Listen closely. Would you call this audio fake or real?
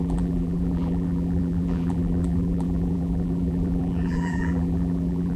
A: fake